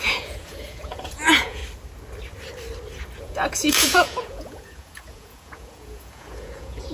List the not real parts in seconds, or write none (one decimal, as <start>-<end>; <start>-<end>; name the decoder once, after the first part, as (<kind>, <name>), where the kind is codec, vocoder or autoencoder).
0.0-1.6 (vocoder, Vocos); 3.2-6.9